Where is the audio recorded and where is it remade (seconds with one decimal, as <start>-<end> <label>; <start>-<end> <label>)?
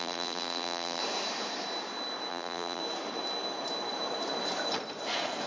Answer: 0.0-1.0 remade; 1.0-2.3 recorded; 2.3-2.8 remade; 2.8-5.5 recorded